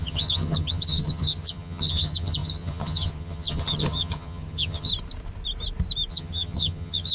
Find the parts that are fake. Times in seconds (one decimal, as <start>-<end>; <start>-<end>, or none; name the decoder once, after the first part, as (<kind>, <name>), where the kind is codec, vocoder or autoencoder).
0.0-4.9 (vocoder, HiFi-GAN); 6.1-7.1